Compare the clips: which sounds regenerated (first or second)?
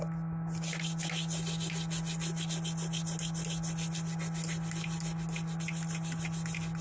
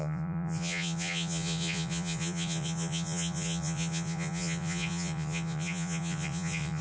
second